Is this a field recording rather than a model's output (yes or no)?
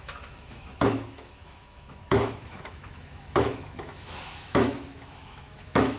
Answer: no